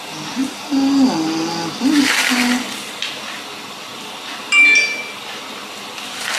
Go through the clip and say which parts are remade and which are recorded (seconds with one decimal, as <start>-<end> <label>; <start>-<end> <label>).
0.0-6.4 recorded